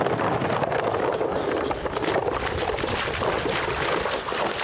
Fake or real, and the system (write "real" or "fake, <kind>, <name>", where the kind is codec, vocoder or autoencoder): real